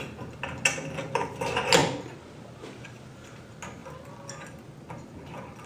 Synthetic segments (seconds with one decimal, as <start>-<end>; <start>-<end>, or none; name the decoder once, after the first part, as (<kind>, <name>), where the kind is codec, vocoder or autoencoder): none